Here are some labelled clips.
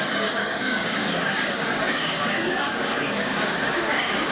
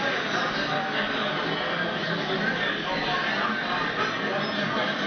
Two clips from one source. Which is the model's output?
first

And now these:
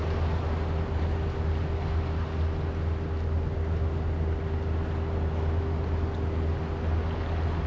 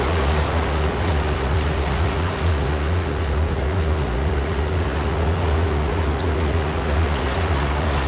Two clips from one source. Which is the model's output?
second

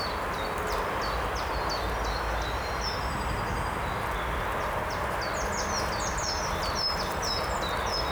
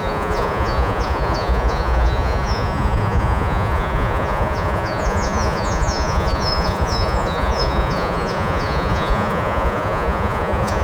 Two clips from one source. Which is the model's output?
second